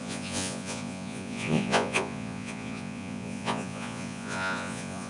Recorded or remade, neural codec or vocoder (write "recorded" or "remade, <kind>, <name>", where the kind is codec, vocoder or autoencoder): remade, vocoder, Vocos